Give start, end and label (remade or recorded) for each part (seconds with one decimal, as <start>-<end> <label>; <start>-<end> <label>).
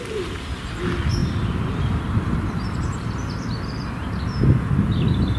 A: 0.0-1.2 recorded; 1.2-4.4 remade; 4.4-5.4 recorded